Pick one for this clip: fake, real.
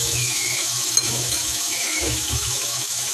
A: fake